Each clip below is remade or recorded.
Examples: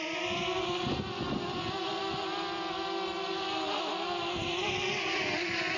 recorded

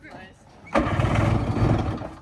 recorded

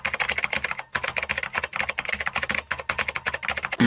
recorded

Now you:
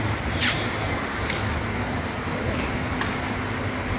recorded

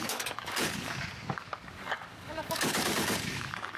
remade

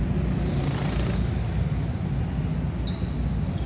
recorded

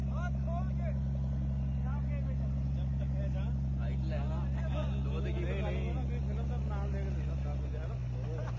recorded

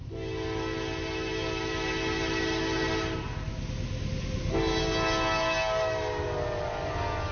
recorded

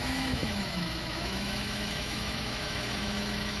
remade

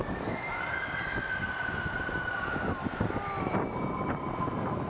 recorded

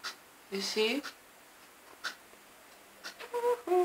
recorded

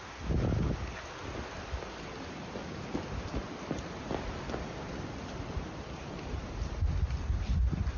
recorded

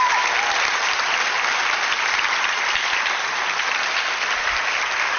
recorded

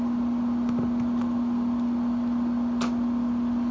recorded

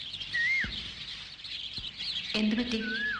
recorded